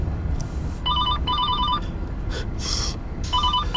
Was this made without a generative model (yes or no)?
no